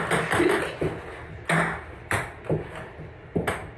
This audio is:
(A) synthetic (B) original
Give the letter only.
B